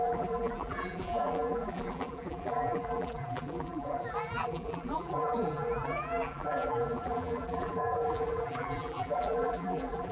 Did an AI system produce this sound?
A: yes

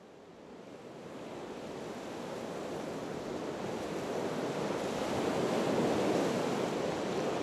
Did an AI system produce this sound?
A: no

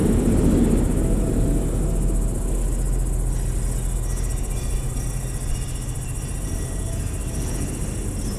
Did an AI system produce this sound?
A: no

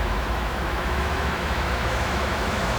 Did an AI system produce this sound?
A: yes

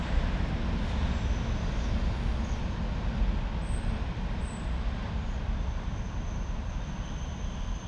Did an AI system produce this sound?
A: no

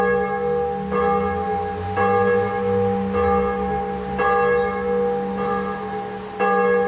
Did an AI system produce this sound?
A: no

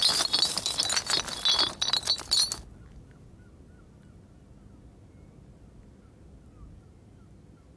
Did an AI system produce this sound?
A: no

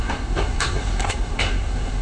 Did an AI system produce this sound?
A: yes